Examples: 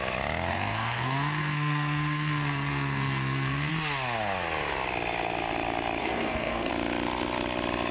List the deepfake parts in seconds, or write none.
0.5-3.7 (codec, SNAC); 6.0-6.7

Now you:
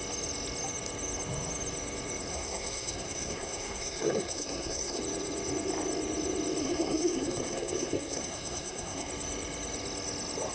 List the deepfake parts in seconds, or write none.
2.3-5.0 (codec, SNAC); 6.6-9.1

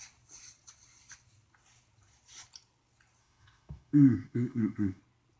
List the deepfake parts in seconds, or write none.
3.2-5.0 (autoencoder, DAC-VAE)

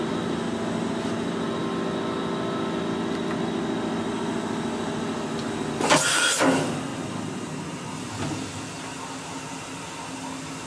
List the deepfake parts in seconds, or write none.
none

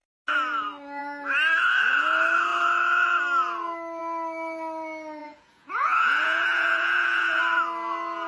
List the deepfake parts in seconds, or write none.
5.2-7.4 (vocoder, Vocos)

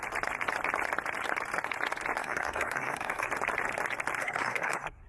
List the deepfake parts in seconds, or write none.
2.2-3.3 (codec, SNAC); 4.2-5.1

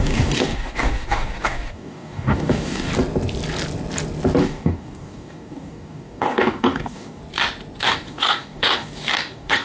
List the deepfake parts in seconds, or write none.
0.0-2.9 (codec, DAC); 4.4-7.2; 7.8-9.6